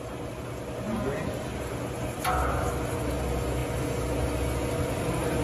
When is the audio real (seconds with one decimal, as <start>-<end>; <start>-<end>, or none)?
0.0-5.4